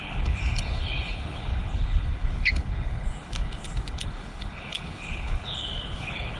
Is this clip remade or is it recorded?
remade